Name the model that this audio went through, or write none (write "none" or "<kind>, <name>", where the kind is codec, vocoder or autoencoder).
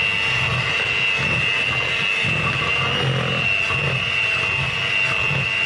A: none